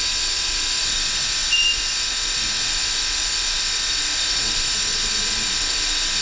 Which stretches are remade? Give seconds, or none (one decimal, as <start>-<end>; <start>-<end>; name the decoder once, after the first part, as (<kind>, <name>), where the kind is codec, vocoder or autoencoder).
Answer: none